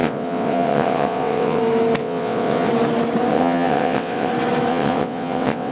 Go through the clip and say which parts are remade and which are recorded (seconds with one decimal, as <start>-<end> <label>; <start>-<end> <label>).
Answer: 0.0-1.6 remade; 1.6-2.0 recorded; 2.0-2.7 remade; 2.7-3.3 recorded; 3.3-4.3 remade; 4.3-4.7 recorded; 4.7-5.7 remade